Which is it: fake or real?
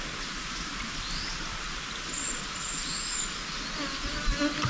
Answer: real